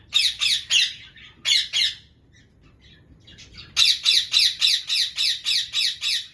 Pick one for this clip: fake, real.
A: real